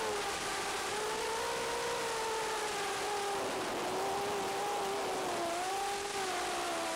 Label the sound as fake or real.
real